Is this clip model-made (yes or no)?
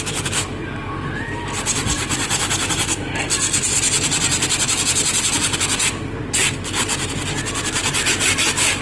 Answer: no